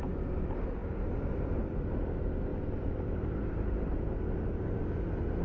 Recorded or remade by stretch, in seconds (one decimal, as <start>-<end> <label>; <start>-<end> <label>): 0.0-5.4 recorded